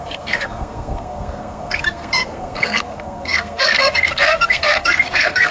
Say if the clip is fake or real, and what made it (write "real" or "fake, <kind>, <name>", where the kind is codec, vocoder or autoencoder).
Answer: fake, codec, SNAC